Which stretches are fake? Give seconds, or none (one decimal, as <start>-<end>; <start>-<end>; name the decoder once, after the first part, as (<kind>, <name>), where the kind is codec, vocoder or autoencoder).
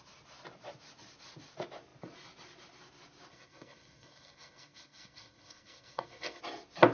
3.3-6.4 (codec, SNAC)